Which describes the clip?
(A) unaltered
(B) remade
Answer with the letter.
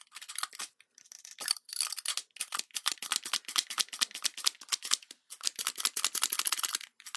A